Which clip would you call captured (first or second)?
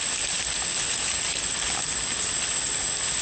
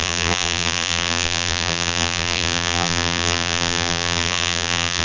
first